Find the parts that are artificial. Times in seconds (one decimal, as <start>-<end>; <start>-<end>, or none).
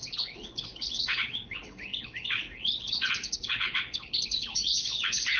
0.0-5.4